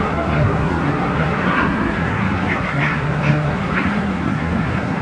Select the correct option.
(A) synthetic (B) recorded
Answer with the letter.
A